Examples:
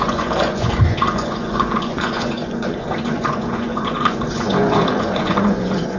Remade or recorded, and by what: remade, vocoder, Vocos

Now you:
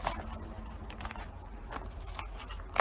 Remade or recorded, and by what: recorded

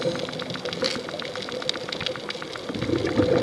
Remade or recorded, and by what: recorded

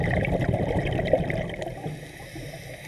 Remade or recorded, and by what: recorded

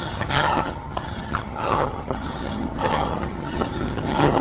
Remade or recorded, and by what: remade, vocoder, HiFi-GAN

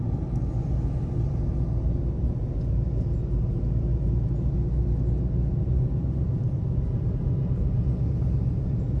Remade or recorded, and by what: recorded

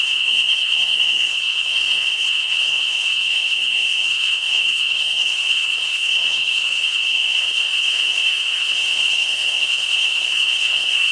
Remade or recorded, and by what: remade, codec, SNAC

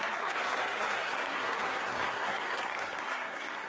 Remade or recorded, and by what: remade, codec, SNAC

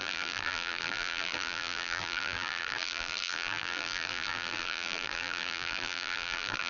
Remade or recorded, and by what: remade, vocoder, BigVGAN v2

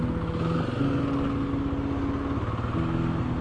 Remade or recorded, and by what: recorded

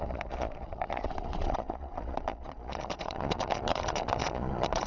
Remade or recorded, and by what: remade, vocoder, Vocos